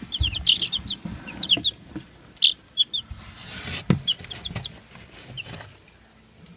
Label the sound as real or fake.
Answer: real